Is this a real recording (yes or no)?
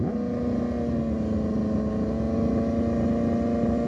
yes